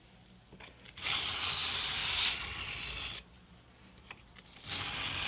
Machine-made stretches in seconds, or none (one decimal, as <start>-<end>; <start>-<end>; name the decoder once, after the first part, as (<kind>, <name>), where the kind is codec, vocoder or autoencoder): none

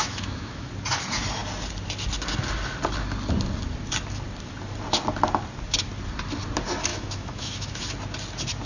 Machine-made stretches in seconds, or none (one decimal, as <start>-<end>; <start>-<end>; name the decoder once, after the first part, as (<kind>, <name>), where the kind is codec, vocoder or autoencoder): 0.0-0.7 (autoencoder, DAC-VAE); 6.9-7.8

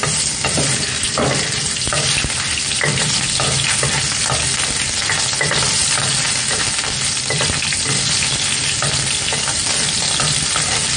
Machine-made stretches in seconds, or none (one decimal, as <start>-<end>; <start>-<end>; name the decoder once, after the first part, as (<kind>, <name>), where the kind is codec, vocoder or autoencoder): 5.8-6.5 (vocoder, BigVGAN v2)

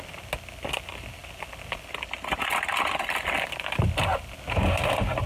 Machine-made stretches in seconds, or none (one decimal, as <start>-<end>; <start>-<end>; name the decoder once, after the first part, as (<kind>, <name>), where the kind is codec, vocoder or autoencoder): none

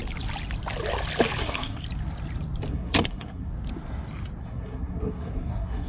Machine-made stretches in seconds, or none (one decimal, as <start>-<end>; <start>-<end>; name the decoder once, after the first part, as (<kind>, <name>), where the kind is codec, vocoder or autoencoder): 1.4-1.8 (codec, SNAC); 2.7-3.5; 4.4-5.9

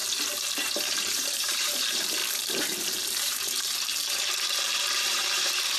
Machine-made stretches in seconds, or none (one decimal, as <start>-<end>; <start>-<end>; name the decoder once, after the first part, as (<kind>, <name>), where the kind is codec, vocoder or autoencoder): 0.5-5.8 (vocoder, BigVGAN v2)

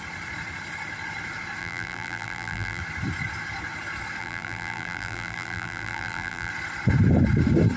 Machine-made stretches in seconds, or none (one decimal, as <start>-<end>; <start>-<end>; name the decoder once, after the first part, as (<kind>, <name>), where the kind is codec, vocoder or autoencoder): 1.6-2.8 (vocoder, BigVGAN v2); 4.2-6.5